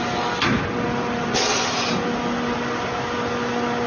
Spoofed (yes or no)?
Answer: no